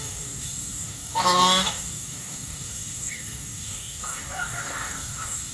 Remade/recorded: remade